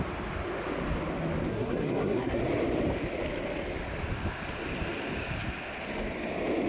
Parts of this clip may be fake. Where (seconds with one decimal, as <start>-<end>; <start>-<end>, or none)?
1.5-2.4